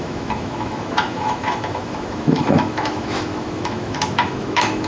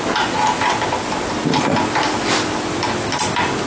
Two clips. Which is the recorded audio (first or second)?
second